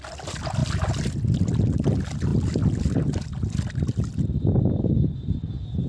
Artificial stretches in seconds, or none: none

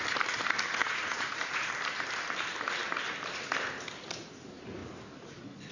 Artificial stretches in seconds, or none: 0.8-1.7 (vocoder, Vocos)

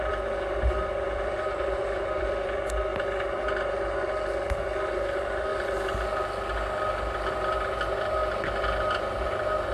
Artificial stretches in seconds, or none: 0.0-2.9 (vocoder, BigVGAN v2); 4.7-5.5; 7.3-8.2; 8.9-9.7

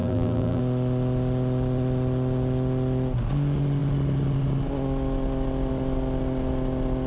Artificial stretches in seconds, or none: 0.0-0.6 (vocoder, BigVGAN v2)

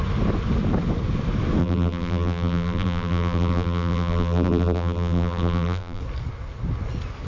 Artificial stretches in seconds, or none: 1.6-6.0 (vocoder, BigVGAN v2)

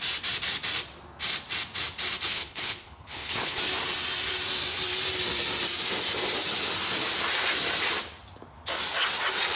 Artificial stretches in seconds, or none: 2.3-3.6 (codec, HILCodec)

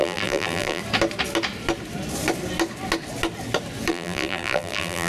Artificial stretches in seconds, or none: 0.0-0.8 (vocoder, BigVGAN v2); 3.9-5.1